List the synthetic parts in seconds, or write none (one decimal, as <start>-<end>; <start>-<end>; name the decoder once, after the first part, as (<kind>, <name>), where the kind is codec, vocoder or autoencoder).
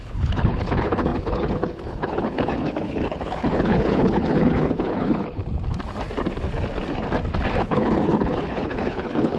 0.0-5.4 (codec, HILCodec); 7.6-9.4